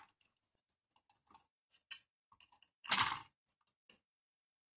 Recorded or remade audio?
recorded